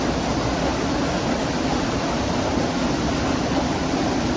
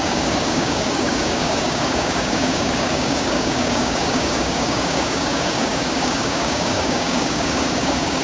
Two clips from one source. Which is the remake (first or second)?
second